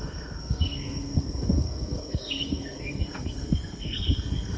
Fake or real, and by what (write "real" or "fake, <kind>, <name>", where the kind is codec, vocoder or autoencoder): fake, codec, SNAC